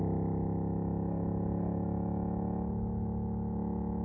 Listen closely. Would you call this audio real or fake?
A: real